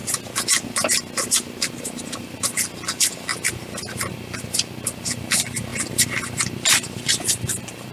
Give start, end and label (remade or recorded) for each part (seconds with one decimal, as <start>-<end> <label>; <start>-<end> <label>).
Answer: 0.0-2.0 recorded; 2.0-3.3 remade; 3.3-4.1 recorded; 4.1-7.9 remade